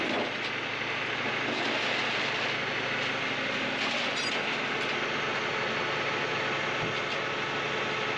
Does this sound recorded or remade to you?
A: recorded